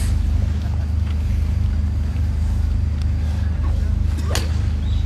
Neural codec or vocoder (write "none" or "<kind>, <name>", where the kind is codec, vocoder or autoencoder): none